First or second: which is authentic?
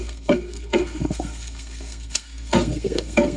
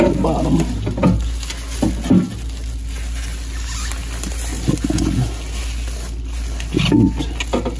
second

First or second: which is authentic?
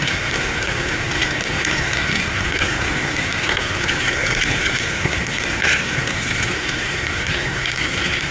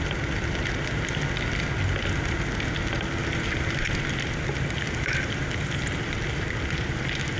second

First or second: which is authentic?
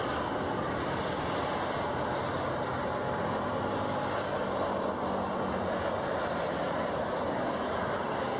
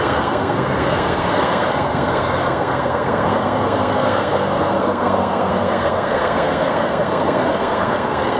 first